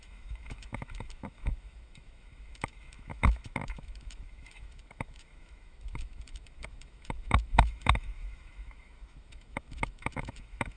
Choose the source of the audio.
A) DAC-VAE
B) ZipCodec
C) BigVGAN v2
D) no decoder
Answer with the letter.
A